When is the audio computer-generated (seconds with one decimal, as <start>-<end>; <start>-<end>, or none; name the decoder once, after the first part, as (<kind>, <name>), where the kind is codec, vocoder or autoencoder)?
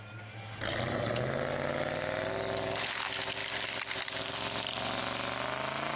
none